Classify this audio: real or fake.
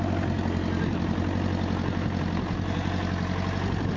real